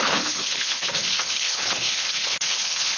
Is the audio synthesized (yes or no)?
yes